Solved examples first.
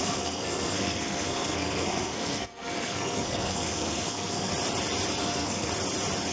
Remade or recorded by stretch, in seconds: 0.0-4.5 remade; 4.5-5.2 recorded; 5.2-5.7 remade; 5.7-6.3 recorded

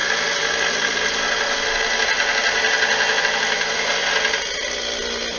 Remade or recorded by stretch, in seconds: 0.0-5.4 recorded

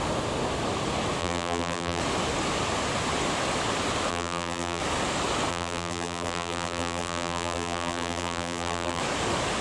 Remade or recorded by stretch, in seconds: 0.0-1.2 recorded; 1.2-2.0 remade; 2.0-4.1 recorded; 4.1-4.8 remade; 4.8-5.5 recorded; 5.5-9.0 remade; 9.0-9.6 recorded

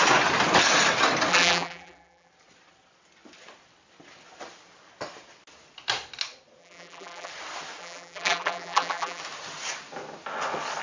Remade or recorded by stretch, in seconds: 0.0-1.3 recorded; 1.3-2.3 remade; 2.3-6.6 recorded; 6.6-7.3 remade; 7.3-7.8 recorded; 7.8-9.2 remade; 9.2-10.8 recorded

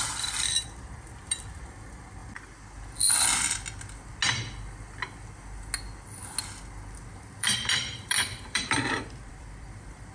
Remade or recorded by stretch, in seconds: 0.0-2.2 remade; 2.2-7.1 recorded; 7.1-10.1 remade